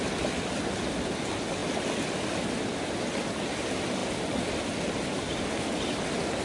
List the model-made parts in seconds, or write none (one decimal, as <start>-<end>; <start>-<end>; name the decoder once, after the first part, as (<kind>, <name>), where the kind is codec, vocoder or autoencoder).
none